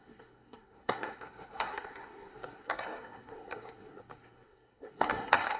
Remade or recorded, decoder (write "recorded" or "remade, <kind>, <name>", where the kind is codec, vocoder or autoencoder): remade, codec, SNAC